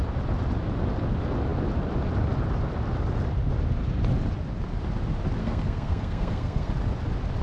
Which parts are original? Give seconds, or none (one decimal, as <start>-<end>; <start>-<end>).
0.0-5.4; 6.7-7.4